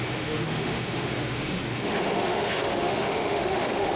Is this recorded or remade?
remade